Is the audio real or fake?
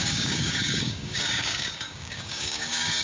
fake